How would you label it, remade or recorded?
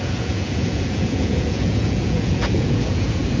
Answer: remade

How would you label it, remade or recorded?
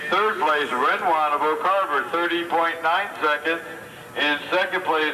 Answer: recorded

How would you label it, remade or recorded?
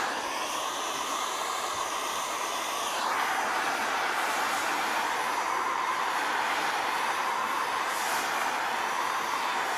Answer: remade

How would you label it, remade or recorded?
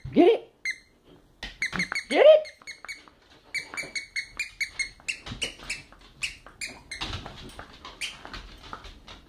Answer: recorded